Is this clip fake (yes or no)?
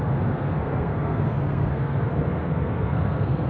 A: yes